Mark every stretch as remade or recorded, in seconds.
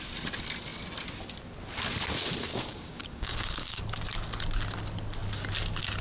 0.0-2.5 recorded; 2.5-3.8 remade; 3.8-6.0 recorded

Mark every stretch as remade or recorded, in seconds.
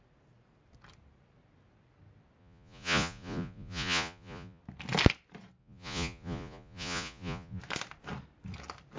0.0-2.4 recorded; 2.4-4.6 remade; 4.6-5.6 recorded; 5.6-7.6 remade; 7.6-9.0 recorded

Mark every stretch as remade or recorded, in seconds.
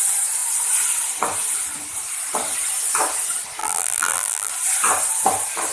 0.0-3.6 recorded; 3.6-4.5 remade; 4.5-5.7 recorded